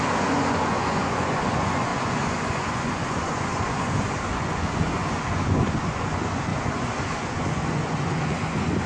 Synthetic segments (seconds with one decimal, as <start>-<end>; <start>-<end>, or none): 0.0-8.9